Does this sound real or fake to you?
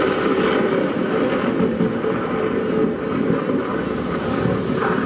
real